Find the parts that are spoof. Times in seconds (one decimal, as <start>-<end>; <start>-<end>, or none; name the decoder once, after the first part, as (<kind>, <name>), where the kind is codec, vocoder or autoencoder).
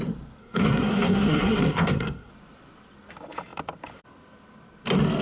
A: 0.4-2.3 (codec, SNAC)